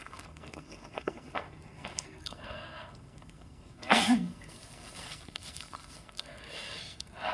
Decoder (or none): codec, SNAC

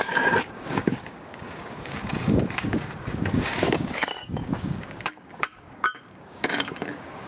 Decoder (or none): codec, DAC